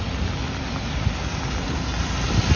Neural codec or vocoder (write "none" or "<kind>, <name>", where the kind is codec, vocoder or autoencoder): none